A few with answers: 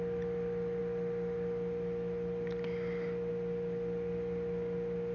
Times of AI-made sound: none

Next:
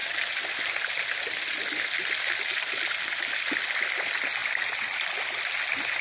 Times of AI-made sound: none